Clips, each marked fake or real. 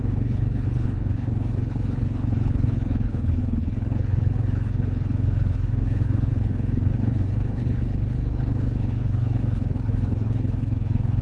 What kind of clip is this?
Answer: fake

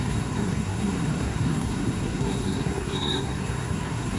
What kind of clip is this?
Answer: fake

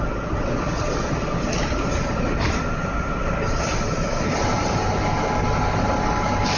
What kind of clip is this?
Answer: real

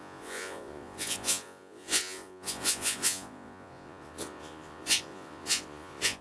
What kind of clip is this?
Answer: fake